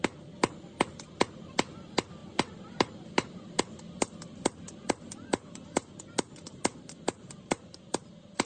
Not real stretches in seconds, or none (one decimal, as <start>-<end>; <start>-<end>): 2.2-3.7; 5.3-5.9; 6.7-8.0

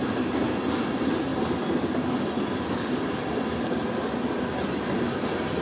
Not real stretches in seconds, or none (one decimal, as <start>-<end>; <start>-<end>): none

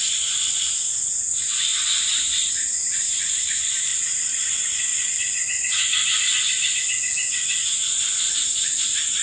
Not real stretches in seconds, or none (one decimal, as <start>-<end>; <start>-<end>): 0.0-1.7; 2.5-4.9; 8.3-9.2

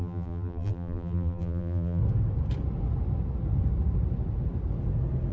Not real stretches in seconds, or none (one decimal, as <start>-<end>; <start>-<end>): 0.0-2.0

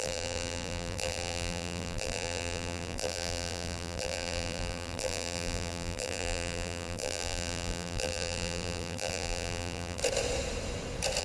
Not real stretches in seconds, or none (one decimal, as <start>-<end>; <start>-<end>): 0.0-10.0

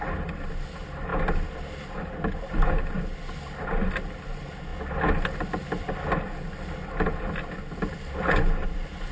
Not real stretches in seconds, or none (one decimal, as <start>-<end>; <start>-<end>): none